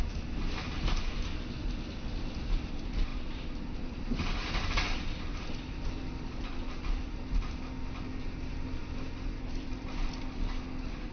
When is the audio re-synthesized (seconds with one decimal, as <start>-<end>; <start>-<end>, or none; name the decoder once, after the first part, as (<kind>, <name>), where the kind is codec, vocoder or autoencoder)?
3.1-4.3 (vocoder, BigVGAN v2); 5.3-6.5